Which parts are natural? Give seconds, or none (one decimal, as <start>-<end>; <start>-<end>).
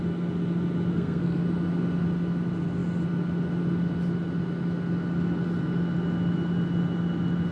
0.0-0.9; 1.4-7.5